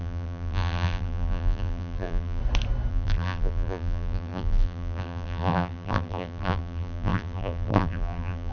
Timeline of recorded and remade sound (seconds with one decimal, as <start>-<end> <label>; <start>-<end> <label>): 0.0-2.4 remade; 2.4-2.9 recorded; 2.9-8.5 remade